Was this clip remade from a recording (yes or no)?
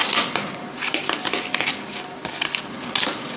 no